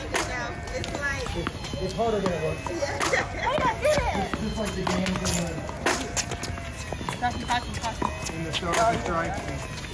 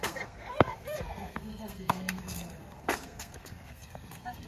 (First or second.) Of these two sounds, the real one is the first